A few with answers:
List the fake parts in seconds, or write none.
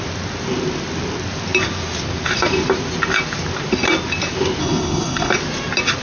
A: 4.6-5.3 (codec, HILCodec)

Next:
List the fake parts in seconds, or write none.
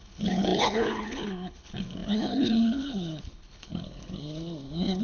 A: 0.0-5.0 (codec, HILCodec)